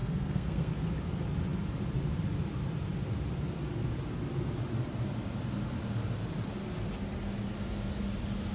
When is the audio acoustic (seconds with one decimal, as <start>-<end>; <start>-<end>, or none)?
0.7-8.5